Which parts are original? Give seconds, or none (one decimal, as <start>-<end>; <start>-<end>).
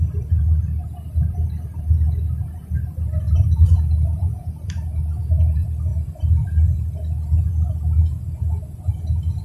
0.0-9.4